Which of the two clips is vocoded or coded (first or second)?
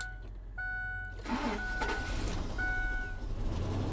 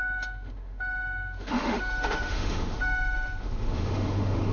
second